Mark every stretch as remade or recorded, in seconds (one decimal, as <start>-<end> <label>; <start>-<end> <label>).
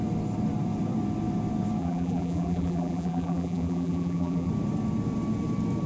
0.0-1.8 recorded; 1.8-4.5 remade; 4.5-5.9 recorded